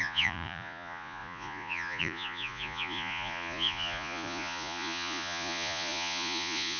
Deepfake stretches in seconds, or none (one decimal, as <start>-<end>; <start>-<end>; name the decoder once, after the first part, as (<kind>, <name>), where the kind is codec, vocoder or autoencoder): 0.0-6.8 (vocoder, Vocos)